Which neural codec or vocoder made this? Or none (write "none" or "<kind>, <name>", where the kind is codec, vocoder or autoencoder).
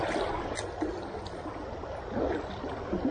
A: none